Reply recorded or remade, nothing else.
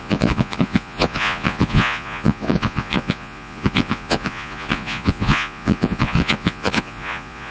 remade